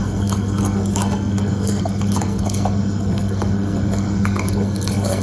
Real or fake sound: fake